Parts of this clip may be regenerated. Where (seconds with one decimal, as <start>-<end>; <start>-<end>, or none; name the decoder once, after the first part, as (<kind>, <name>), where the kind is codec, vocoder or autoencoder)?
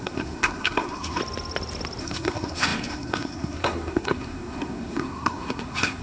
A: 0.0-1.2 (codec, SNAC); 2.0-6.0